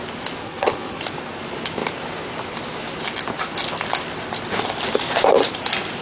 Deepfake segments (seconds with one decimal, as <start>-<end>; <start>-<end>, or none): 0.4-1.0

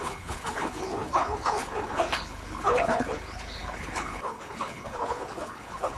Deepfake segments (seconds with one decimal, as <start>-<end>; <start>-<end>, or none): 0.0-6.0

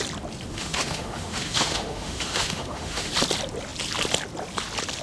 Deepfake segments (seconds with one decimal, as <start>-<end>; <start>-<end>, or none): 0.5-3.1

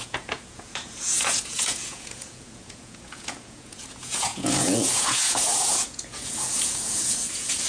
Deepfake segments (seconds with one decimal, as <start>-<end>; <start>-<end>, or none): 0.0-7.7